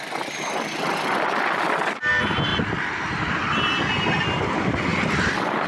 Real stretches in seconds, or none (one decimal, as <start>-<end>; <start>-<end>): 0.0-5.7